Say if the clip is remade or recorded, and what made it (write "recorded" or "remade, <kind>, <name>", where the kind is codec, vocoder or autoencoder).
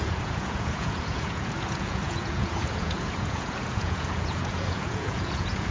remade, vocoder, Vocos